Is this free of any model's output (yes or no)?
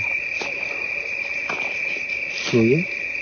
yes